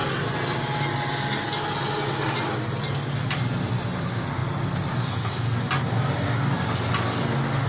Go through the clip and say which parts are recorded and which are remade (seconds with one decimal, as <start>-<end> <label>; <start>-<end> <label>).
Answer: 0.0-7.7 recorded